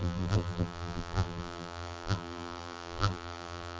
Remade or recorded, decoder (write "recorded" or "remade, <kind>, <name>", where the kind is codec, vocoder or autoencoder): remade, vocoder, BigVGAN v2